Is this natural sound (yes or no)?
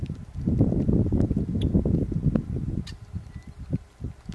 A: yes